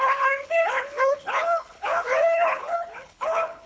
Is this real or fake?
fake